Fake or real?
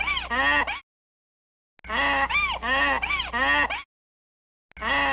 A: real